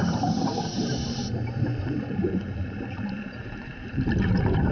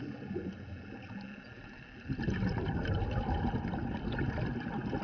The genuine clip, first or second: second